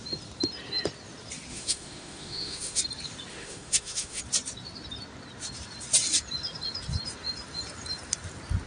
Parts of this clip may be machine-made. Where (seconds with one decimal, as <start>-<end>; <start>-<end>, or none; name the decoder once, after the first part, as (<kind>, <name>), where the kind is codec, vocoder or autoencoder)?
1.5-2.8 (autoencoder, DAC-VAE); 3.3-4.2